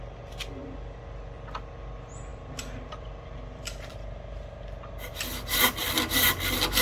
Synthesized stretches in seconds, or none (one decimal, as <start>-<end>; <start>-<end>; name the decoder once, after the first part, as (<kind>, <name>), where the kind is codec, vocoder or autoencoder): 2.3-5.1 (vocoder, BigVGAN v2)